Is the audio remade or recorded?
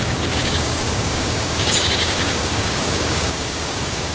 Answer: remade